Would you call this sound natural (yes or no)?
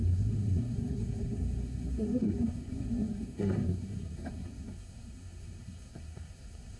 no